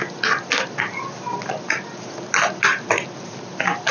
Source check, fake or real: real